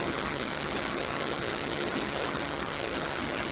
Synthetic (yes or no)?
yes